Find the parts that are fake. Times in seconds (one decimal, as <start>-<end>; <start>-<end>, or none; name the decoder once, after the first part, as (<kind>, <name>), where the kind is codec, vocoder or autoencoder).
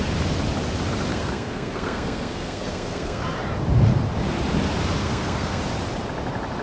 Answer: 1.1-3.2 (codec, SNAC); 5.0-5.6